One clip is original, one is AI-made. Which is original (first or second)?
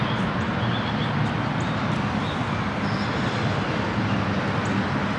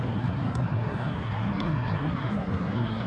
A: first